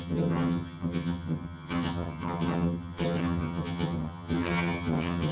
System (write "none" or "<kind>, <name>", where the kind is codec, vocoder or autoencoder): vocoder, HiFi-GAN